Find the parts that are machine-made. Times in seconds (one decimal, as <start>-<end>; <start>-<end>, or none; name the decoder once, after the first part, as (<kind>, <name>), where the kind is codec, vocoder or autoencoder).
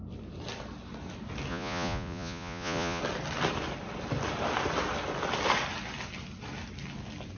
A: 1.5-3.0 (vocoder, Vocos)